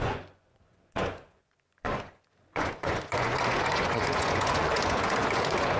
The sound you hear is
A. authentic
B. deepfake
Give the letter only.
B